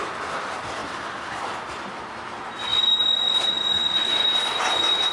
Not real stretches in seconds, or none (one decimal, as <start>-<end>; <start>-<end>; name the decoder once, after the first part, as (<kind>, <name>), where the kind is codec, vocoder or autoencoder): 0.8-2.0 (vocoder, BigVGAN v2)